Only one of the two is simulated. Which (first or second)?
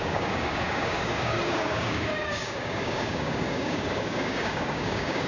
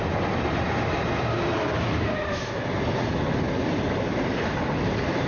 first